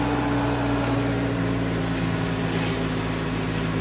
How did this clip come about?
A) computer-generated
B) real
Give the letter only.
B